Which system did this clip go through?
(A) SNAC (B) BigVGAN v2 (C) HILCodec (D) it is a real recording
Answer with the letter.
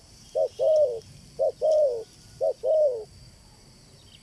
D